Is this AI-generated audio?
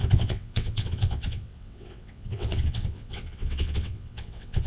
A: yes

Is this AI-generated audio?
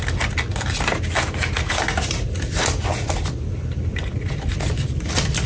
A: no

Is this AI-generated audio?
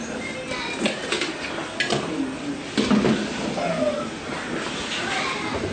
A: no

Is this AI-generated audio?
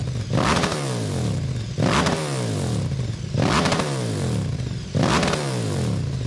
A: no